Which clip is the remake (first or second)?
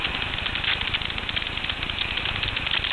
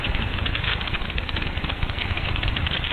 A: second